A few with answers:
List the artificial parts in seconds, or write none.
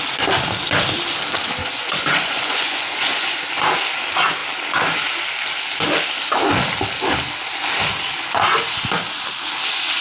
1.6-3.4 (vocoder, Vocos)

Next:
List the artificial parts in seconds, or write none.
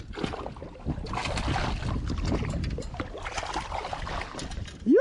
none